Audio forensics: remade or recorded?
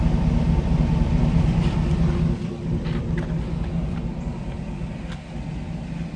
recorded